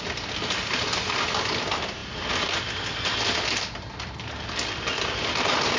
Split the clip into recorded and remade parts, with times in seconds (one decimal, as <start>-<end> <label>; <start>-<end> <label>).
0.0-5.8 recorded